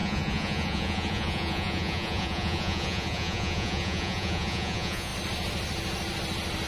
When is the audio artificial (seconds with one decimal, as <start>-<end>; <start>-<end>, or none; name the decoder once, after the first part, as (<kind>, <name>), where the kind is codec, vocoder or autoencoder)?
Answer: 0.0-5.1 (vocoder, Vocos)